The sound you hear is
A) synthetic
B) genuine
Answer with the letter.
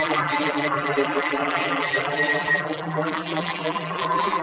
A